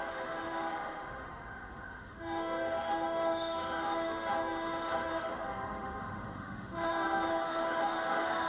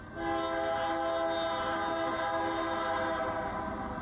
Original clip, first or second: second